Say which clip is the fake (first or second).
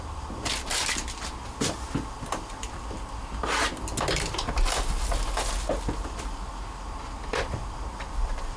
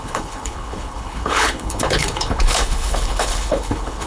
second